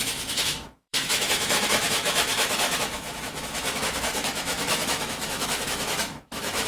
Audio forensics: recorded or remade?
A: remade